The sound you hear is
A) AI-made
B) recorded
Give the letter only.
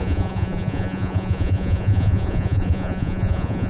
A